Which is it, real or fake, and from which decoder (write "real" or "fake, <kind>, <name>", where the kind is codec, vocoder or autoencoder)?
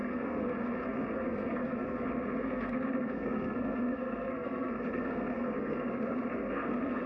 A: fake, codec, SNAC